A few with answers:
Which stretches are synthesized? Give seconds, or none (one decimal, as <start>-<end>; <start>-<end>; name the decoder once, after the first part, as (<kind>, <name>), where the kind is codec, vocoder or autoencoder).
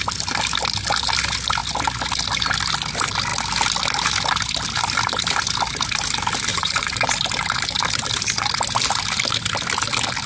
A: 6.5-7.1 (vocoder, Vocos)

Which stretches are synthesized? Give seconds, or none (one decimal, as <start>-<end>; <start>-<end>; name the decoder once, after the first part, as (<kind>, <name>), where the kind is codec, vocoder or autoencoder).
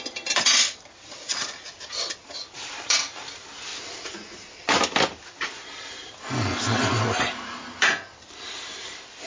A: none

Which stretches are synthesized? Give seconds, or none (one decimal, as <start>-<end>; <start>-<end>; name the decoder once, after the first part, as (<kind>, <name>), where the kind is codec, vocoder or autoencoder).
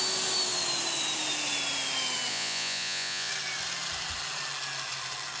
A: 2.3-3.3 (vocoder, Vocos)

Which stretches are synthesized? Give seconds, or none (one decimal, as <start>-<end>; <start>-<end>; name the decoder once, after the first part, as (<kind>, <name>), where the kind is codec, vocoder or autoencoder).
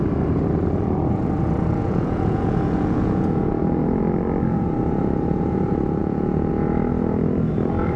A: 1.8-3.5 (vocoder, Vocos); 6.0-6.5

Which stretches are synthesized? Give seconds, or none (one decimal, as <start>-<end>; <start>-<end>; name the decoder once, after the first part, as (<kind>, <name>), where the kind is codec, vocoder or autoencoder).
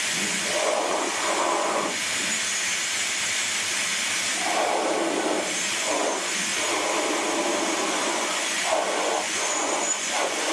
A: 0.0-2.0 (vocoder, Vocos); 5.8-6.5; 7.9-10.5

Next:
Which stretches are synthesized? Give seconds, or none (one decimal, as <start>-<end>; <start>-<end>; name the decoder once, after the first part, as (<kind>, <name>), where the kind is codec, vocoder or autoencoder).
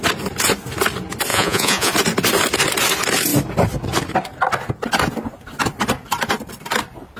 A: 1.3-1.9 (vocoder, Vocos)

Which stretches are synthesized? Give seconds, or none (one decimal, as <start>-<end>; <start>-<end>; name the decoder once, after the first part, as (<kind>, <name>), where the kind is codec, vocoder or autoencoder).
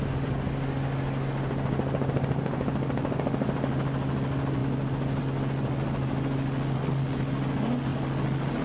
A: none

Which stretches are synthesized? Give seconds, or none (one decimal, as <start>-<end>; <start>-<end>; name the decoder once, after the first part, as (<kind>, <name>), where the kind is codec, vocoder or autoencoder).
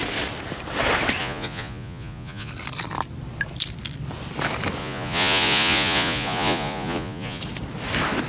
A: 1.2-2.5 (vocoder, Vocos); 4.8-7.4